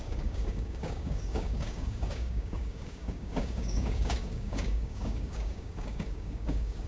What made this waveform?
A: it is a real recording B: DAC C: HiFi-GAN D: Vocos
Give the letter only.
B